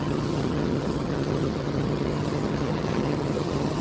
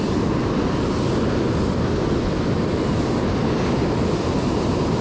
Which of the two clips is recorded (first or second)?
second